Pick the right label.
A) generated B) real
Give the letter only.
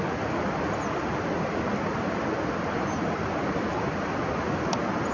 B